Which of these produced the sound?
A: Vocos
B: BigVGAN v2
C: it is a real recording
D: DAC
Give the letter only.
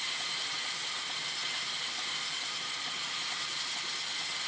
C